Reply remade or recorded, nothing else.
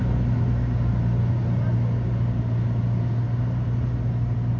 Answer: recorded